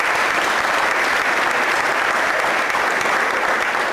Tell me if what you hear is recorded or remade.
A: recorded